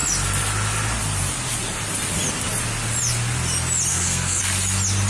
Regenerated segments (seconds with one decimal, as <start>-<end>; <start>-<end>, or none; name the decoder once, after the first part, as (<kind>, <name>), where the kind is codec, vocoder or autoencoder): 3.9-4.4 (codec, SNAC)